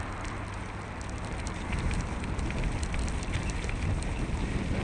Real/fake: real